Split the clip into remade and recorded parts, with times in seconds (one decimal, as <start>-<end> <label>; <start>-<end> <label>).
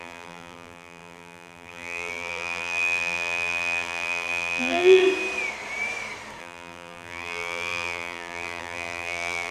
0.0-5.0 remade; 5.0-6.4 recorded; 6.4-9.5 remade